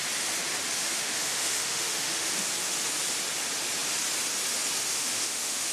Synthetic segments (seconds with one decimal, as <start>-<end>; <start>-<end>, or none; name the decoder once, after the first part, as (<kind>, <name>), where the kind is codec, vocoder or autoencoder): 0.8-2.3 (autoencoder, DAC-VAE); 4.9-5.7